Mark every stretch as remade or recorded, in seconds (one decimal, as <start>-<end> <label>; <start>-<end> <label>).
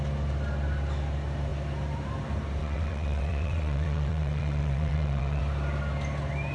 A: 0.0-2.6 recorded; 2.6-5.4 remade; 5.4-6.5 recorded